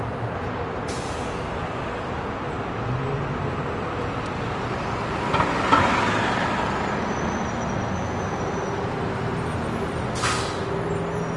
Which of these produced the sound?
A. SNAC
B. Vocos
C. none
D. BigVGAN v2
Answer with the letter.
C